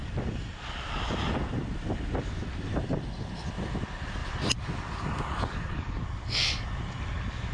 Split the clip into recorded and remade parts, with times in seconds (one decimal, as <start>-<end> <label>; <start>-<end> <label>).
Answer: 0.0-3.6 remade; 3.6-4.2 recorded; 4.2-5.9 remade; 5.9-7.5 recorded